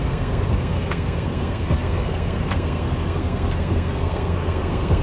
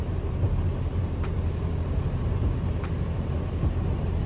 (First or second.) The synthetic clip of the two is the first